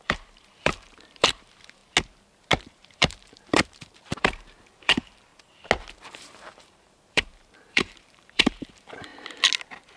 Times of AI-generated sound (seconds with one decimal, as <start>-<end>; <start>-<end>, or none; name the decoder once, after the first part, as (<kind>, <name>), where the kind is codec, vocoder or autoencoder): 0.0-1.8 (vocoder, BigVGAN v2); 2.6-5.3; 5.9-9.1; 9.6-10.0